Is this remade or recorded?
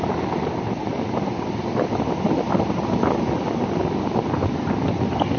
recorded